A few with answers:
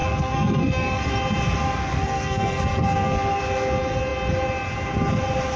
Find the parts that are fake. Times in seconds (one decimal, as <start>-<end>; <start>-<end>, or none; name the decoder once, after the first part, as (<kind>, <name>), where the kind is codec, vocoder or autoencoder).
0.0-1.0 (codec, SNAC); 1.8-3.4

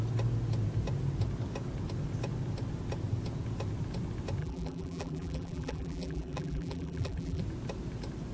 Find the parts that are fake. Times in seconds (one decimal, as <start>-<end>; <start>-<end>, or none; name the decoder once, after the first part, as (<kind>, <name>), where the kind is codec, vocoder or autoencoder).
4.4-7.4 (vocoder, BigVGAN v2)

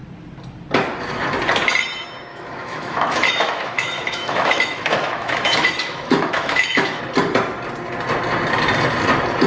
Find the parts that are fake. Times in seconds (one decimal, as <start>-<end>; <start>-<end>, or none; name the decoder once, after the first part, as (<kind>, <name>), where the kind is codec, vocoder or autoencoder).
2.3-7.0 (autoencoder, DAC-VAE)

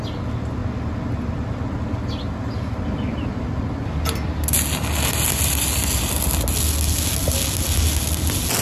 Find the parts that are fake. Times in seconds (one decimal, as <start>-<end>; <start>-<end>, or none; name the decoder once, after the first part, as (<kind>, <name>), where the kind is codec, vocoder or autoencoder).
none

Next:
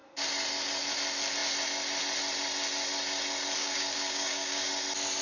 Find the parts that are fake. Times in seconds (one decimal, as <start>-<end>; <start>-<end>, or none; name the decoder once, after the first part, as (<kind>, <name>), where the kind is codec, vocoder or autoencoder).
3.6-4.7 (codec, DAC)

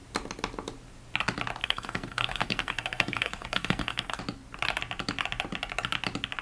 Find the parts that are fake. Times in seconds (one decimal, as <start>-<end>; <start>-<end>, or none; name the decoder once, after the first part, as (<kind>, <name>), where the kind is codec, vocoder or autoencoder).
1.6-4.2 (codec, SNAC)